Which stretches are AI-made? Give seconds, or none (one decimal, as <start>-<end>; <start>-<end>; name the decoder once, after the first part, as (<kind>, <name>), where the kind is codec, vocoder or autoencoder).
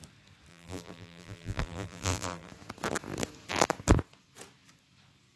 0.5-2.5 (vocoder, BigVGAN v2)